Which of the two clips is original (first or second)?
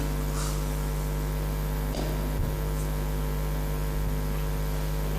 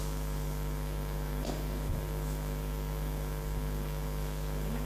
first